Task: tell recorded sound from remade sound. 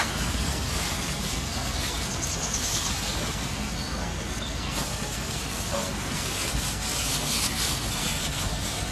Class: remade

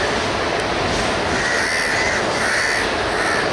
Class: recorded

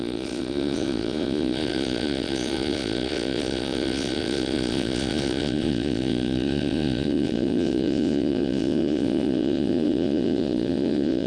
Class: remade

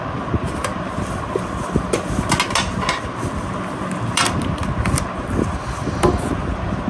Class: recorded